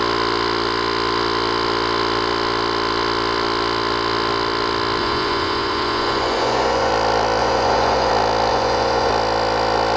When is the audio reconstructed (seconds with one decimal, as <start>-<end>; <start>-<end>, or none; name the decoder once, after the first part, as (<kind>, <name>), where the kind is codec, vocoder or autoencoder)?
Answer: 5.0-6.9 (vocoder, Vocos); 7.4-8.1; 8.5-9.1